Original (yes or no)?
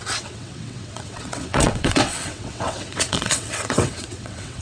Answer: no